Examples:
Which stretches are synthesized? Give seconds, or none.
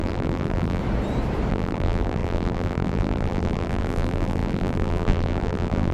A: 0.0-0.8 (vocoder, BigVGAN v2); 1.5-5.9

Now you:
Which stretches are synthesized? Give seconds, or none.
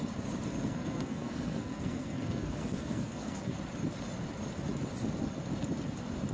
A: 0.5-3.6 (codec, SNAC)